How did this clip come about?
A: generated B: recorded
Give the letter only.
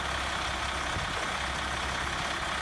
B